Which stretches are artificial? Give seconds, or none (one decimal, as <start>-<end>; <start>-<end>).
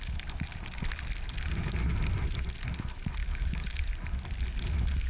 3.2-3.8